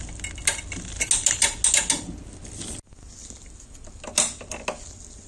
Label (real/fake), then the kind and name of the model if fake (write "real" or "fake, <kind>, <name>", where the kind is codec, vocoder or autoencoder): real